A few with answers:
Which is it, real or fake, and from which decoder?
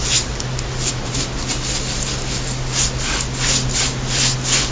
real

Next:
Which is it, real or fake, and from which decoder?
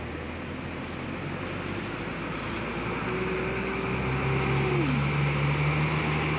real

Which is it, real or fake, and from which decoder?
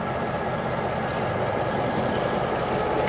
real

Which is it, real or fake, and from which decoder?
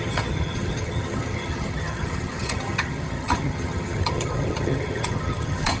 fake, vocoder, HiFi-GAN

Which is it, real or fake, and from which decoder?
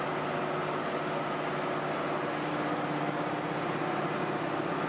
real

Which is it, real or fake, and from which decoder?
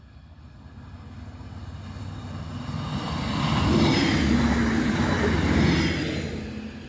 real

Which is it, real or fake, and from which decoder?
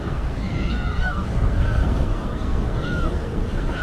fake, codec, SNAC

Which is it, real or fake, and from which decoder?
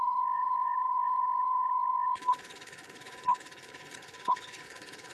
fake, codec, HILCodec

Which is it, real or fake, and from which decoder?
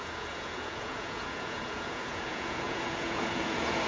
fake, vocoder, Vocos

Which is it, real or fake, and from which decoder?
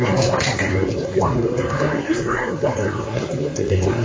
fake, codec, SNAC